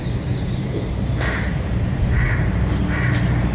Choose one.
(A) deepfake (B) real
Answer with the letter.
A